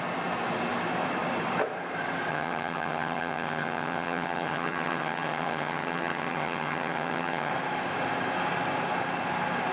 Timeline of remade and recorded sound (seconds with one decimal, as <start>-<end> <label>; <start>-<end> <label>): 0.0-2.3 recorded; 2.3-7.5 remade; 7.5-9.7 recorded